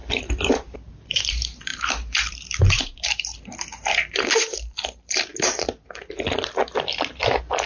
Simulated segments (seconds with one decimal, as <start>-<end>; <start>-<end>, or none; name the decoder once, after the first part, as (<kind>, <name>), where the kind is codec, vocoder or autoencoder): 0.5-5.3 (vocoder, BigVGAN v2)